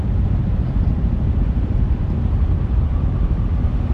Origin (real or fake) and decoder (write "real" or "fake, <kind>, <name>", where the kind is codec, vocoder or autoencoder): real